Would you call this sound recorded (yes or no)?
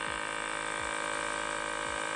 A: yes